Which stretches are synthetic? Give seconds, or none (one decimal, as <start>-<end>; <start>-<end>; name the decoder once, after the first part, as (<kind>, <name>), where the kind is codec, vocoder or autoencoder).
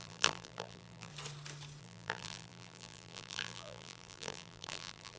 0.0-1.1 (vocoder, BigVGAN v2); 1.8-5.2